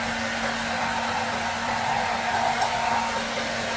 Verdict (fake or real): real